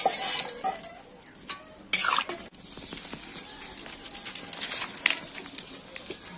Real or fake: real